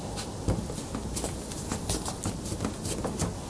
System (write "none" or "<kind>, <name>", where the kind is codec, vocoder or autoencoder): none